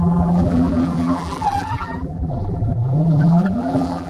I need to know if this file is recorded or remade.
remade